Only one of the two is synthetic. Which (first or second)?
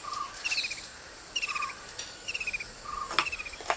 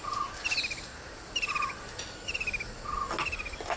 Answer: first